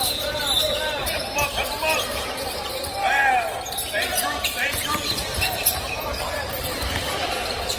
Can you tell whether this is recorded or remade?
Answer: remade